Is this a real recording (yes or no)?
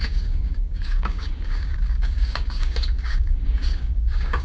no